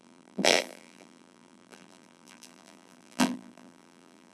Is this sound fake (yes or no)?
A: yes